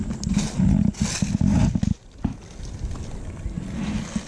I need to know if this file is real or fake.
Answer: real